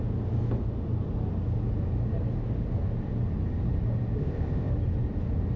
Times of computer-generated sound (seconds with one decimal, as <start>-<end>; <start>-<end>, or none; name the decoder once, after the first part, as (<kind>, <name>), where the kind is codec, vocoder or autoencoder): 4.2-4.7 (codec, ZipCodec)